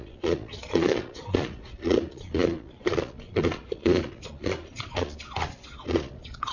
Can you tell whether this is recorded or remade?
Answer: remade